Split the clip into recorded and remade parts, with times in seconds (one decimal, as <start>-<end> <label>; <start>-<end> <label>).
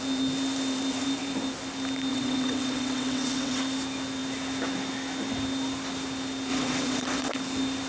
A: 0.0-2.1 recorded; 2.1-3.6 remade; 3.6-6.5 recorded; 6.5-7.3 remade; 7.3-7.9 recorded